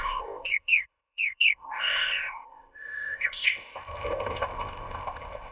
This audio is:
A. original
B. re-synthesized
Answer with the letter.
B